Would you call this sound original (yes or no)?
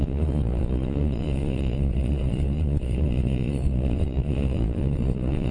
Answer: no